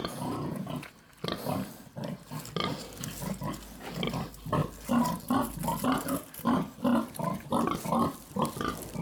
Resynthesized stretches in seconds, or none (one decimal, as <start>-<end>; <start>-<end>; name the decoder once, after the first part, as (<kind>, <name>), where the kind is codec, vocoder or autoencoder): 0.0-0.9 (vocoder, Vocos)